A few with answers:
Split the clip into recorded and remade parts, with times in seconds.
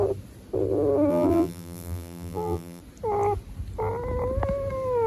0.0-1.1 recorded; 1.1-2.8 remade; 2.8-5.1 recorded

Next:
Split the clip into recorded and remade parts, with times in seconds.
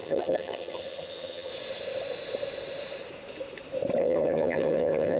0.0-1.5 remade; 1.5-4.0 recorded; 4.0-5.2 remade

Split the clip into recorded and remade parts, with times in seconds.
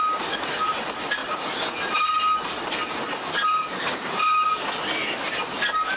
0.0-3.6 recorded; 3.6-4.2 remade; 4.2-5.0 recorded; 5.0-5.5 remade; 5.5-6.0 recorded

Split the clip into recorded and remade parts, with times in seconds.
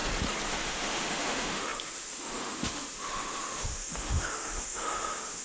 0.0-0.5 recorded; 0.5-5.4 remade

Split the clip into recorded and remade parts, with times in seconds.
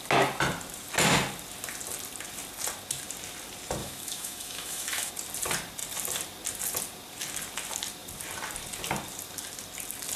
0.0-3.8 recorded; 3.8-5.1 remade; 5.1-10.2 recorded